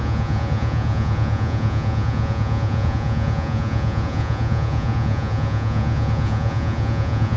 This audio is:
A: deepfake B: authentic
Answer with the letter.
A